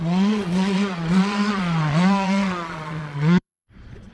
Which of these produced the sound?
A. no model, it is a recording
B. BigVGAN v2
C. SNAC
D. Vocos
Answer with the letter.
D